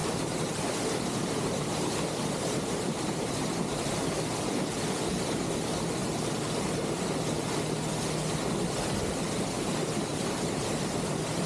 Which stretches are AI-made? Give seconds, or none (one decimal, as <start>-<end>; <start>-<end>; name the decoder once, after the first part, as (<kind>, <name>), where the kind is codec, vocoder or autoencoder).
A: 0.0-3.9 (vocoder, BigVGAN v2); 10.1-10.9